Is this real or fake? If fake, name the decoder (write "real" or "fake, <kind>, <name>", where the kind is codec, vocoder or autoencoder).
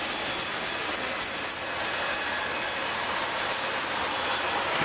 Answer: real